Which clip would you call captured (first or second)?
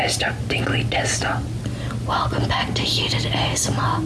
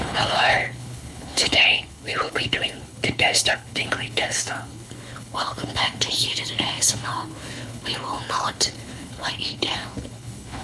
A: first